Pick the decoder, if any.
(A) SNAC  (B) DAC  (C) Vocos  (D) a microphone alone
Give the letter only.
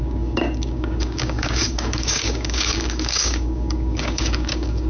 B